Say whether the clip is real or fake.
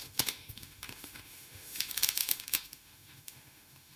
fake